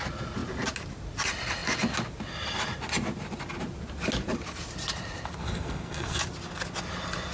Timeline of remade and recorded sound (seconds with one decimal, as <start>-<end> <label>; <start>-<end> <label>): 0.0-5.4 recorded; 5.4-6.2 remade; 6.2-7.3 recorded